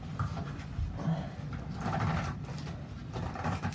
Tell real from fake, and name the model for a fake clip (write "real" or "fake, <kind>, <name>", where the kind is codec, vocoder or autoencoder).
real